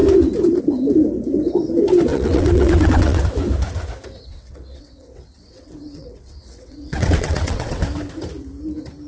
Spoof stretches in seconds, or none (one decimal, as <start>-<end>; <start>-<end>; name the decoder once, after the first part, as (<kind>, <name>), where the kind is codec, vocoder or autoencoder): 2.1-3.2 (vocoder, WaveNeXt); 4.3-7.8